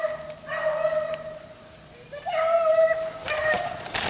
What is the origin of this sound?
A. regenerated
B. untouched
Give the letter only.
B